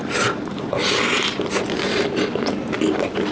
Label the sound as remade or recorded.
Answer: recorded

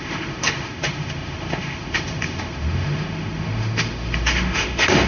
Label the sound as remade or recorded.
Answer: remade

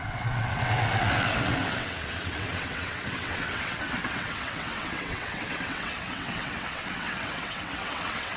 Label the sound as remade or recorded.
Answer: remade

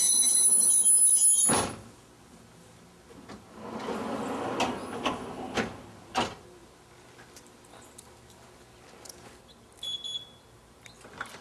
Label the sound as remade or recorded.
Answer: recorded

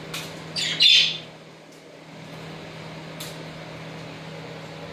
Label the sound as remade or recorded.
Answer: recorded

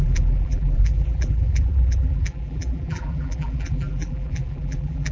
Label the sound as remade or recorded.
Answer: remade